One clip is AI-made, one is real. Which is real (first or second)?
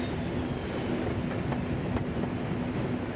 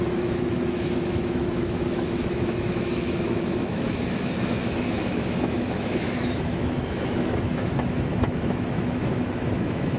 first